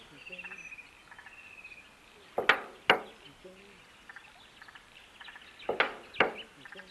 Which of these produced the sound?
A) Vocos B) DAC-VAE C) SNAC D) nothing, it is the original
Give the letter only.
D